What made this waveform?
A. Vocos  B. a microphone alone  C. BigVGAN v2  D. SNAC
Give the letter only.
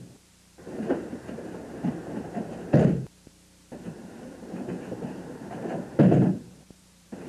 C